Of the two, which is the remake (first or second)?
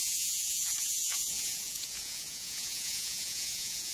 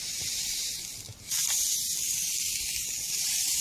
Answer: first